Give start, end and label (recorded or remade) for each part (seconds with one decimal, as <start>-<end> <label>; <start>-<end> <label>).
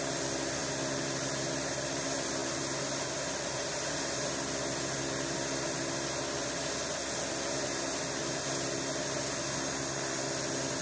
0.0-10.8 recorded